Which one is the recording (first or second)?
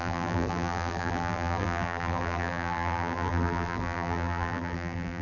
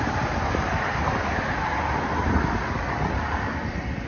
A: second